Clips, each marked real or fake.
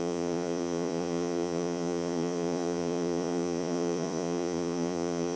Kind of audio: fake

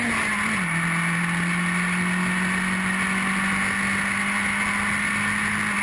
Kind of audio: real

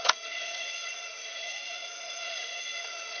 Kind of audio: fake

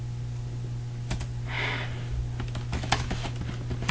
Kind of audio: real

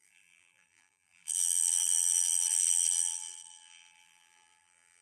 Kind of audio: fake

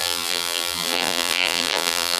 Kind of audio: fake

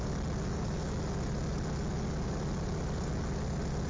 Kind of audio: real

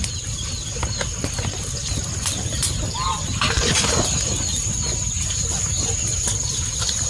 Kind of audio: real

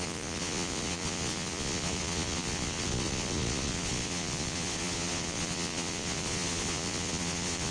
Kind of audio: fake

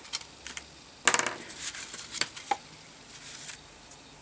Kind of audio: real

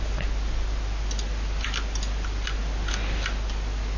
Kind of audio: real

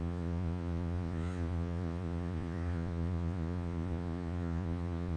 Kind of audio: fake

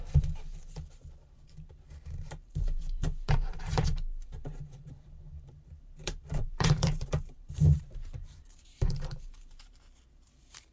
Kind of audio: fake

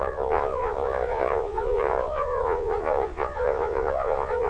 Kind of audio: fake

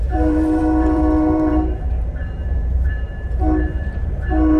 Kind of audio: fake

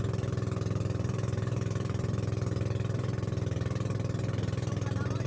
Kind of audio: real